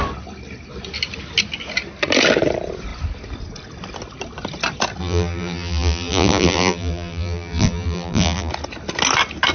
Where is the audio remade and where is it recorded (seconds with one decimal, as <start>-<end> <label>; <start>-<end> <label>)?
0.0-5.0 recorded; 5.0-8.5 remade; 8.5-9.5 recorded

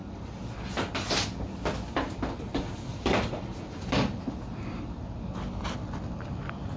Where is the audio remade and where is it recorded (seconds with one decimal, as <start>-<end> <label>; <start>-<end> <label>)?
0.0-0.7 remade; 0.7-2.9 recorded; 2.9-5.4 remade; 5.4-6.8 recorded

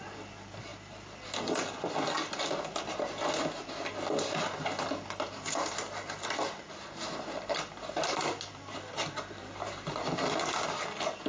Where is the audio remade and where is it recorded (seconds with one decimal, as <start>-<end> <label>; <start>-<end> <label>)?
0.0-9.4 recorded; 9.4-10.2 remade; 10.2-11.3 recorded

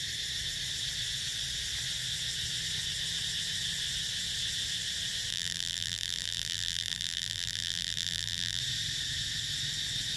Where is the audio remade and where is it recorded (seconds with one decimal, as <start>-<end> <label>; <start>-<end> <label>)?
0.0-5.3 recorded; 5.3-8.6 remade; 8.6-10.2 recorded